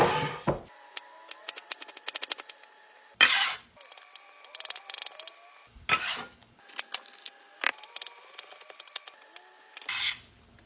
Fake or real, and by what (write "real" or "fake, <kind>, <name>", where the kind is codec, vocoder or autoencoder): real